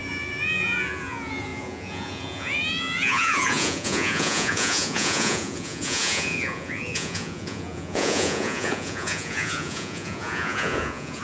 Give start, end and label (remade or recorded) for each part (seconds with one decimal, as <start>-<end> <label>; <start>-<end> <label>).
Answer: 0.0-11.2 remade